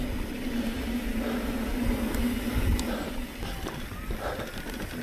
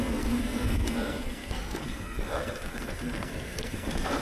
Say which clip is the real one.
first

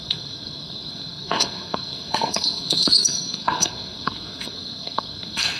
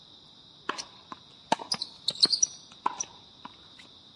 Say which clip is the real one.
second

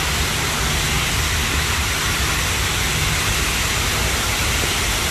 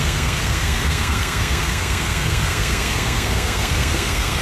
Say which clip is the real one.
first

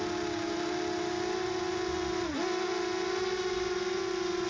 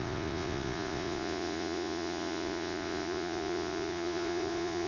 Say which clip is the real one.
first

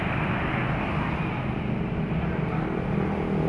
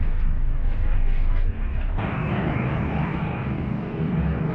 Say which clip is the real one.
first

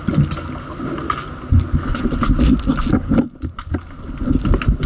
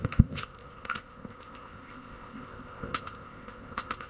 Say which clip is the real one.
first